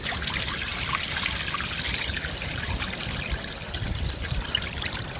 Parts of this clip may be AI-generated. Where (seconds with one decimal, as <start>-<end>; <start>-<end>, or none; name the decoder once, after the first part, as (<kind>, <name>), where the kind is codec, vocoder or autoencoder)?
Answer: none